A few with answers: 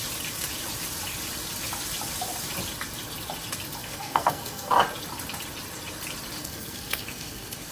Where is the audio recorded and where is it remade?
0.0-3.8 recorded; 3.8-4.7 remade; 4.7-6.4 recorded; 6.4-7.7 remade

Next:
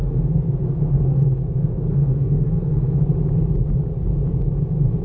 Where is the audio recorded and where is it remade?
0.0-3.0 remade; 3.0-5.0 recorded

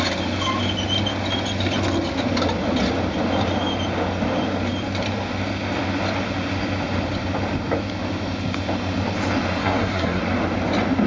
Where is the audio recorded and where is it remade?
0.0-9.6 recorded; 9.6-10.2 remade; 10.2-11.1 recorded

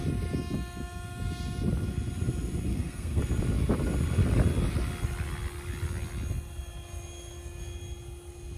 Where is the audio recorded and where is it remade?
0.0-2.7 recorded; 2.7-3.2 remade; 3.2-8.6 recorded

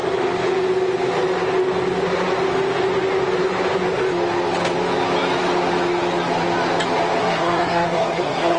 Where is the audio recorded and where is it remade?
0.0-7.2 recorded; 7.2-8.6 remade